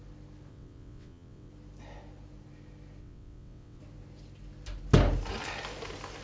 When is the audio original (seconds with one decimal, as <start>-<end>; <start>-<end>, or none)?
0.0-0.5; 1.5-3.0; 3.8-6.2